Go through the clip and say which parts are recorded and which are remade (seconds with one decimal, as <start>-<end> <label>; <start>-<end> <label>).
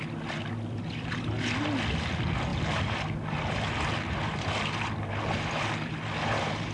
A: 0.0-6.7 recorded